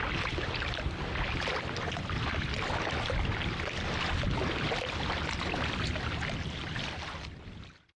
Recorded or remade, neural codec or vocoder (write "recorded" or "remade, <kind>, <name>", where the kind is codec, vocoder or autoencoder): recorded